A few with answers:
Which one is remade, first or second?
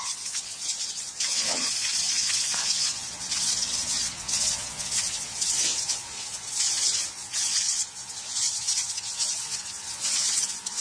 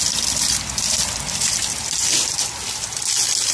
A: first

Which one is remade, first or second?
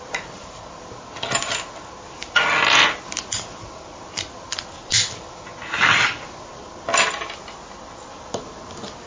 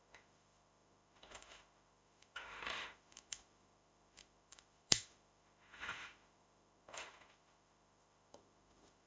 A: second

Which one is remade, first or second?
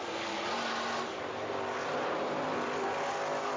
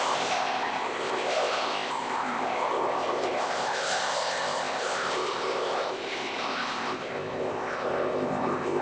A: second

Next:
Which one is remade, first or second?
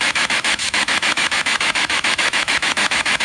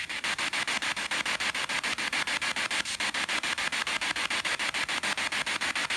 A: first